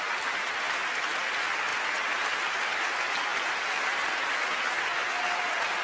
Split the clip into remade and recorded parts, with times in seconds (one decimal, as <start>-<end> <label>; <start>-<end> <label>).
0.0-5.8 recorded